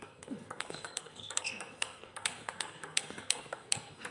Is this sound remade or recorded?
remade